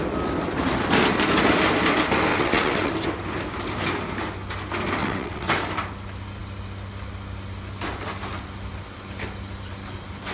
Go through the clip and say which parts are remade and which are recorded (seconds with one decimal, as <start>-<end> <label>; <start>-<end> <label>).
0.0-2.3 recorded; 2.3-2.9 remade; 2.9-5.0 recorded; 5.0-5.5 remade; 5.5-10.3 recorded